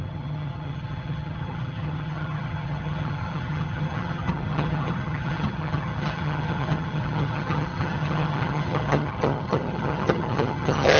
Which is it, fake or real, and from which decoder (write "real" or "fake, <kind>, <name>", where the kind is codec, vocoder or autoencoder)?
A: fake, vocoder, HiFi-GAN